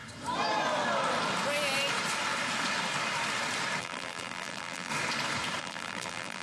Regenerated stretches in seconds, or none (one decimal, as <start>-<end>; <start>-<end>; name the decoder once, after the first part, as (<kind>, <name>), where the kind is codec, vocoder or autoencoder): 3.8-4.9 (vocoder, BigVGAN v2); 5.6-6.4